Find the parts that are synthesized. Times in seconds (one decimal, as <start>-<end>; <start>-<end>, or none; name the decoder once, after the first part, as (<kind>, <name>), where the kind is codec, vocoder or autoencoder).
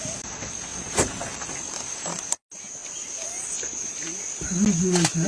0.7-2.2 (vocoder, BigVGAN v2)